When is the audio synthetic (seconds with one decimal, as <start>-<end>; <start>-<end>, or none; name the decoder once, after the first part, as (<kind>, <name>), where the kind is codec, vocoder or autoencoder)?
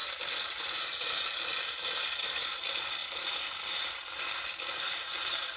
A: 0.5-3.0 (vocoder, BigVGAN v2); 3.7-5.6